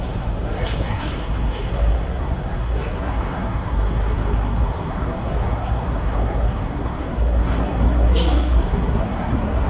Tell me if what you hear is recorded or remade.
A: remade